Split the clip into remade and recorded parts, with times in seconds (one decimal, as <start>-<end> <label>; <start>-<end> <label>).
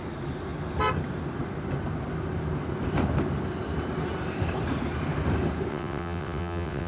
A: 0.0-5.7 recorded; 5.7-6.9 remade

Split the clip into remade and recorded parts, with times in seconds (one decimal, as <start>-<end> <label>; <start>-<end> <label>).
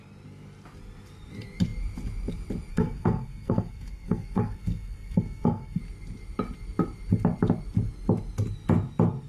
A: 0.0-2.7 recorded; 2.7-5.8 remade; 5.8-9.3 recorded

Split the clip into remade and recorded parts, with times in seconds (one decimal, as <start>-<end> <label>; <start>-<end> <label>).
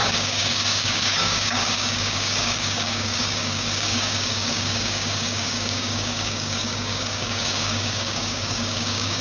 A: 0.0-9.2 remade